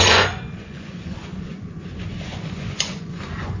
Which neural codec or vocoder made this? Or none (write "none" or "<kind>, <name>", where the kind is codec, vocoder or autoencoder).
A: vocoder, Vocos